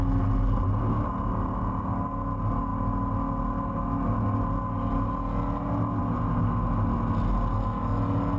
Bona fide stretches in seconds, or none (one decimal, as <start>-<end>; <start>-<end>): 0.0-8.4